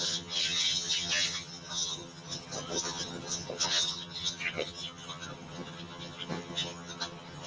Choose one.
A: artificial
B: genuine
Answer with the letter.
A